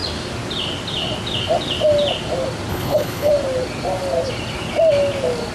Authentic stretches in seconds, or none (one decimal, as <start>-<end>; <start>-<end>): 0.0-2.7; 3.3-5.5